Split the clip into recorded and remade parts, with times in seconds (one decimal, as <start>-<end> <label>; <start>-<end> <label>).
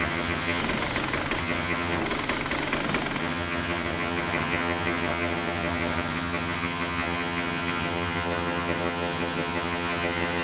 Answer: 0.0-0.6 remade; 0.6-1.4 recorded; 1.4-2.0 remade; 2.0-3.2 recorded; 3.2-10.4 remade